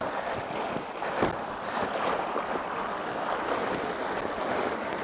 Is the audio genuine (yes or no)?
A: yes